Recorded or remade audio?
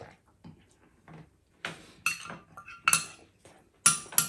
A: recorded